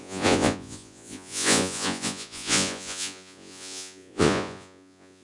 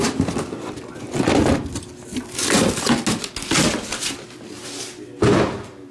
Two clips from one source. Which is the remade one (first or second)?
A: first